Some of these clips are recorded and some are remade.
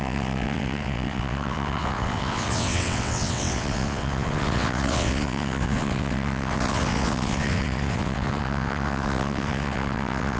remade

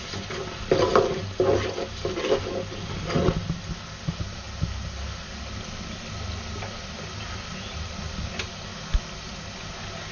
recorded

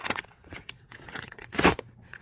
remade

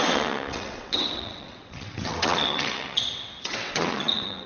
remade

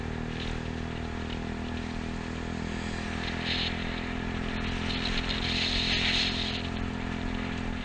recorded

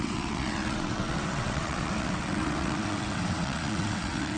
remade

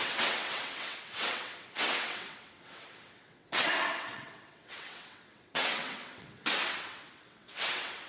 remade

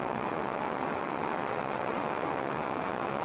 remade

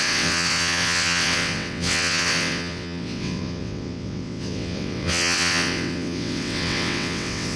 remade